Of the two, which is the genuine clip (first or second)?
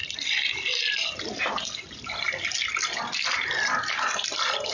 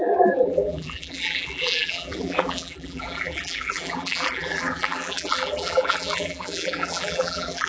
first